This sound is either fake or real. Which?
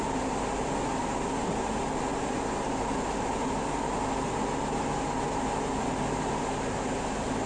real